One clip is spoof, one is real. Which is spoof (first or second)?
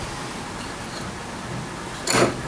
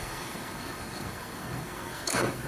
second